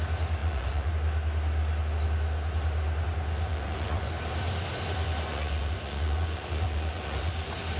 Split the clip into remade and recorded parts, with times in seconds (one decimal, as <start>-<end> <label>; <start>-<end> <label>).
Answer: 0.0-0.4 recorded; 0.4-0.9 remade; 0.9-3.5 recorded; 3.5-4.1 remade; 4.1-5.3 recorded; 5.3-7.3 remade; 7.3-7.8 recorded